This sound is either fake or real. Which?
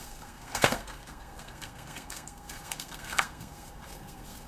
fake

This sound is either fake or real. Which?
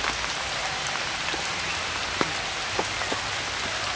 real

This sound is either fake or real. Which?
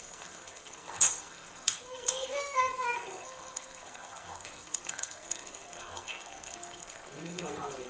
fake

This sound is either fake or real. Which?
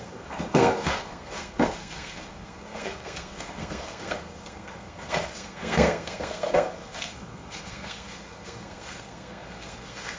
fake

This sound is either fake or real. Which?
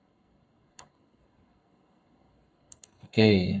fake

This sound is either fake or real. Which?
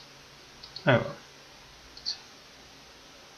real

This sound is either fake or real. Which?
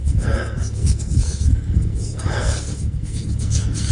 fake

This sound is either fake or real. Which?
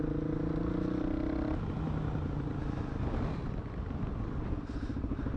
real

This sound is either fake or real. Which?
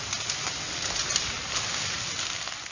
real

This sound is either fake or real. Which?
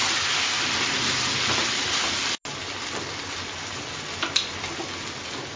real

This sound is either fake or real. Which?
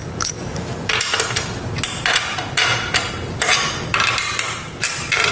real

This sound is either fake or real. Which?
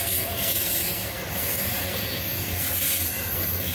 fake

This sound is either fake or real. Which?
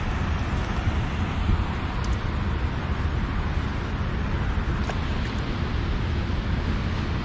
real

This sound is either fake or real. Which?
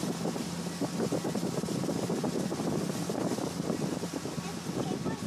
real